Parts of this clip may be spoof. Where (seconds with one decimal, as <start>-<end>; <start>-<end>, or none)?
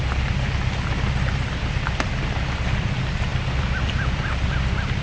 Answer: 0.0-5.0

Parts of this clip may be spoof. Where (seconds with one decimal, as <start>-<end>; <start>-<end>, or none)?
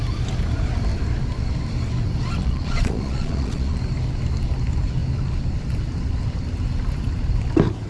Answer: 2.4-3.8